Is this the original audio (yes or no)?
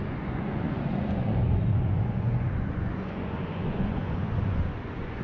no